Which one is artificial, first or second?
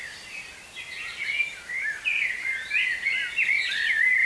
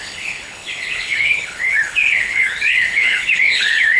second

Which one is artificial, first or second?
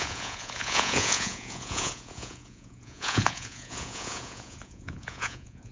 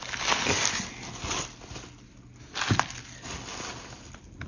first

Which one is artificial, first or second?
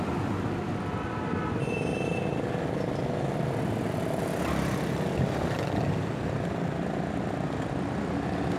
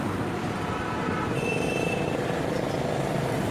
second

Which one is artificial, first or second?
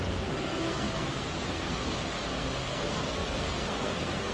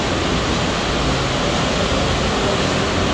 first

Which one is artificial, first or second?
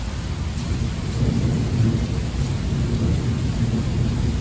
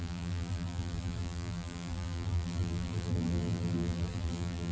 second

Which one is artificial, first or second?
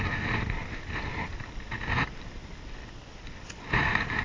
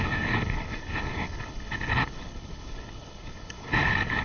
second